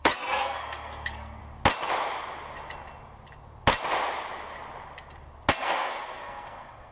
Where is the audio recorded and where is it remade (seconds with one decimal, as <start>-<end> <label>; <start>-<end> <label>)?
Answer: 0.0-1.4 remade; 1.4-5.5 recorded; 5.5-6.9 remade